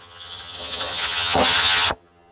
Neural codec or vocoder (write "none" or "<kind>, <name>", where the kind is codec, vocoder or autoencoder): vocoder, HiFi-GAN